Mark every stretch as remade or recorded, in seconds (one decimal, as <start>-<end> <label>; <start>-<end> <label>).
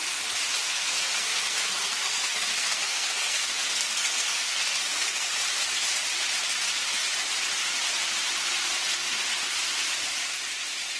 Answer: 0.0-0.6 recorded; 0.6-5.3 remade; 5.3-11.0 recorded